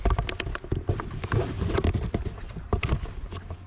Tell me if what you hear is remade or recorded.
recorded